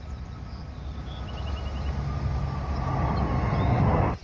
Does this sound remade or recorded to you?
recorded